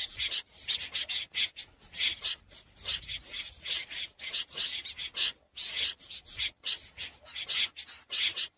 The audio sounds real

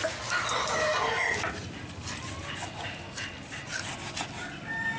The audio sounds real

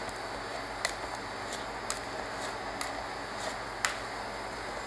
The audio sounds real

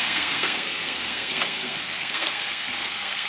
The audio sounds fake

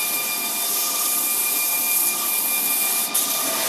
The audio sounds real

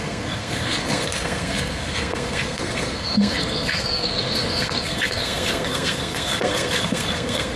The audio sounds fake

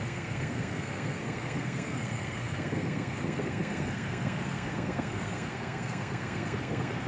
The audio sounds fake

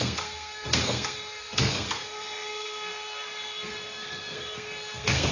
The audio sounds fake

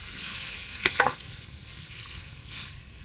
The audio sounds fake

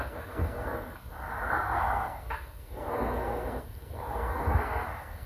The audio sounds fake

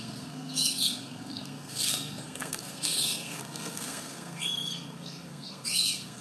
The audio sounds fake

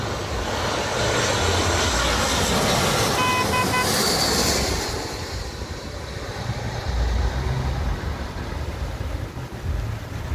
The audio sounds real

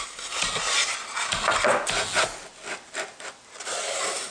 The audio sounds real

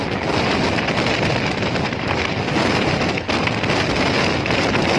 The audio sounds real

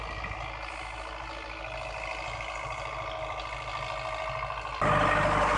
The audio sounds real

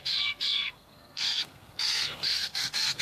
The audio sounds fake